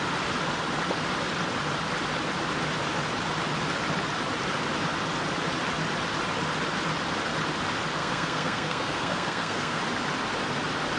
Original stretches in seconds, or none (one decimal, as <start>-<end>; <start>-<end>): 0.0-8.0; 9.8-11.0